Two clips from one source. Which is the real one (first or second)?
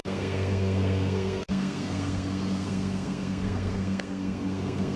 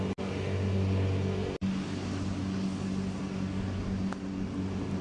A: second